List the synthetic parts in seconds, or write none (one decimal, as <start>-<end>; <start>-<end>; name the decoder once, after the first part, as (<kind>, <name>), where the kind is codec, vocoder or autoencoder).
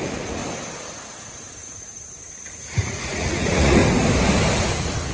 0.0-0.4 (vocoder, Vocos); 2.4-3.8; 4.6-5.1